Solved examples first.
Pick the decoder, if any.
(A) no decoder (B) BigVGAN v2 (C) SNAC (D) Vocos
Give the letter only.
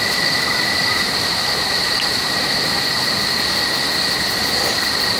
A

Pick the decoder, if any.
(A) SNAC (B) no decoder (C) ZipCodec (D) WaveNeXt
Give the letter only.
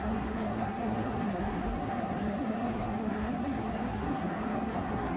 A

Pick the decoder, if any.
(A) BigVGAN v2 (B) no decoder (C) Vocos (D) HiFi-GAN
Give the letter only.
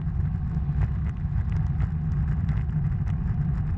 B